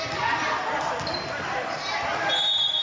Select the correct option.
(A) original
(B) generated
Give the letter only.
A